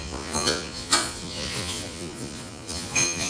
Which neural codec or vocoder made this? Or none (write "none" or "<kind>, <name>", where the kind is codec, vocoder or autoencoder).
vocoder, Vocos